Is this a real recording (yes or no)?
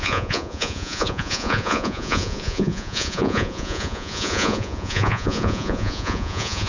no